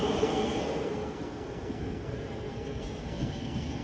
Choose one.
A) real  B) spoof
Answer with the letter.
B